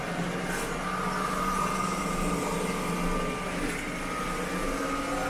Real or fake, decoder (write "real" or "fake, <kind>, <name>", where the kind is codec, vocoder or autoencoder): real